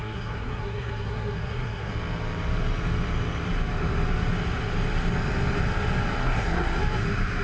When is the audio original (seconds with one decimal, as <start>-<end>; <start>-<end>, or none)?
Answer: 1.9-6.2; 6.8-7.4